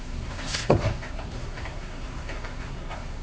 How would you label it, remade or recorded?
remade